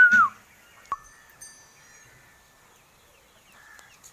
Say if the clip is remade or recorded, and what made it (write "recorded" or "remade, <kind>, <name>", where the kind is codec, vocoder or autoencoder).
recorded